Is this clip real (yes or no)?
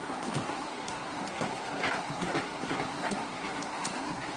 no